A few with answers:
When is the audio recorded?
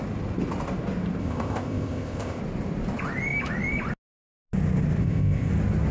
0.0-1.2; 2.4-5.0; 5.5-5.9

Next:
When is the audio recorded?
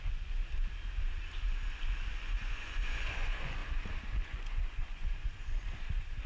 0.4-2.1; 3.6-4.1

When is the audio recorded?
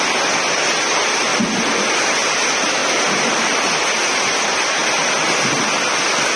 1.3-2.3; 2.8-3.3; 4.8-6.4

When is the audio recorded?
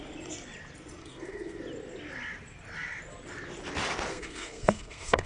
0.0-1.0; 1.6-4.1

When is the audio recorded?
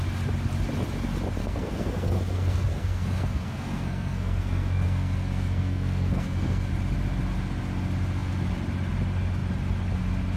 0.0-1.4; 6.7-10.4